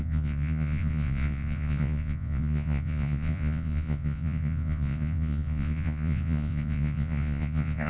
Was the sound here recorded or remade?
remade